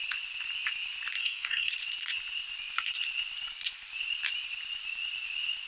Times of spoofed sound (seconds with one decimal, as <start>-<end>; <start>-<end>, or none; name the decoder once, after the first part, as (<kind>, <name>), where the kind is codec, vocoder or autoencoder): 1.2-1.7 (codec, DAC)